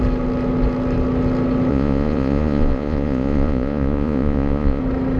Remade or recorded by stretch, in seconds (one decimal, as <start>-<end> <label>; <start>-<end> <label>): 0.0-1.7 recorded; 1.7-4.8 remade; 4.8-5.2 recorded